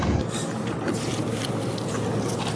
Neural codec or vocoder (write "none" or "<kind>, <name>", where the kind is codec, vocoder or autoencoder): none